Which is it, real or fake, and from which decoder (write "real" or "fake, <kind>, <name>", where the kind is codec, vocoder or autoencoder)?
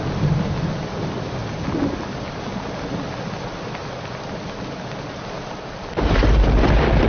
real